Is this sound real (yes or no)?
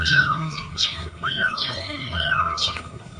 no